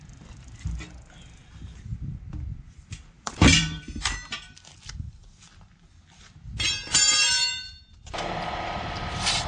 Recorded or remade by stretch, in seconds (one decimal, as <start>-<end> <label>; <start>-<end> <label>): 0.0-9.5 remade